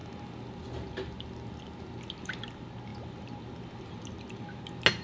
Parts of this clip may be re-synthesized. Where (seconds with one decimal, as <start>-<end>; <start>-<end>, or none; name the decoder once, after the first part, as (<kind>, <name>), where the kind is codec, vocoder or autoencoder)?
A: none